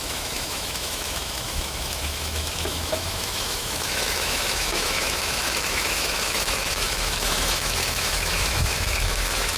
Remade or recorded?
remade